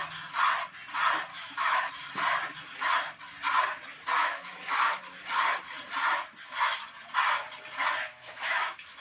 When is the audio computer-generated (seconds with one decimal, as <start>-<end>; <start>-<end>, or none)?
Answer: 1.3-1.9; 4.2-5.0; 8.1-9.0